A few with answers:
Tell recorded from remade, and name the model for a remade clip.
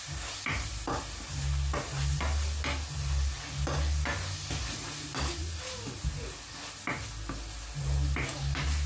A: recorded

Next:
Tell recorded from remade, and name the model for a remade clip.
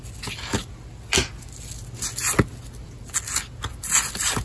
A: recorded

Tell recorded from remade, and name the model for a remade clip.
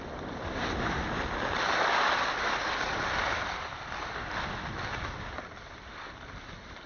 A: recorded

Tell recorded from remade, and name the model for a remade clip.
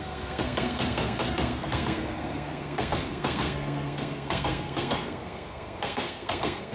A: remade, codec, SNAC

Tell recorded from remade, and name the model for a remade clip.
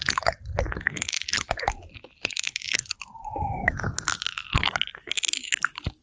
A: recorded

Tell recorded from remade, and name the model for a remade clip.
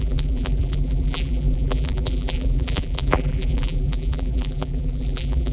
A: remade, vocoder, BigVGAN v2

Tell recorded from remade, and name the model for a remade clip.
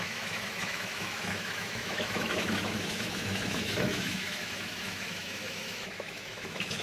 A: remade, autoencoder, DAC-VAE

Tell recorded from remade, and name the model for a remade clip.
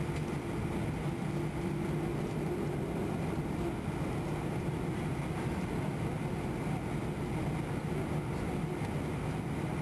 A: recorded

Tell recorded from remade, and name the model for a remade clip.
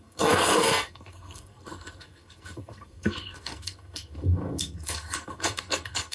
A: remade, codec, SNAC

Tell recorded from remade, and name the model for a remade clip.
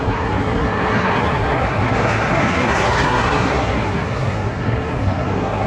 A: remade, codec, SNAC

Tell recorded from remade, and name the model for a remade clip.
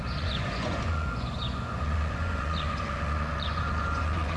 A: remade, vocoder, Vocos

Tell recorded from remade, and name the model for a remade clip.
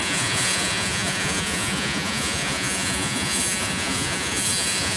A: remade, vocoder, Vocos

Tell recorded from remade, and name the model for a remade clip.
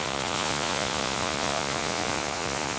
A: remade, vocoder, Vocos